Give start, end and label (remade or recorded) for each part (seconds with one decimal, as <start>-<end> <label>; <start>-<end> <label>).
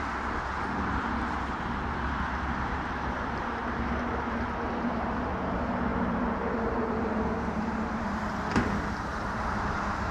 0.0-5.9 recorded; 5.9-8.5 remade; 8.5-9.1 recorded; 9.1-10.1 remade